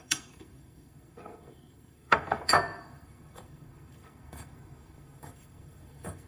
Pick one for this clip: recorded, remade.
remade